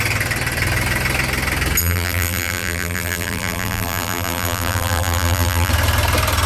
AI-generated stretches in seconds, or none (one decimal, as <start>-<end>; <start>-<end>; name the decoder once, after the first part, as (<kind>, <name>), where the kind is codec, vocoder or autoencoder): 1.8-5.7 (vocoder, BigVGAN v2)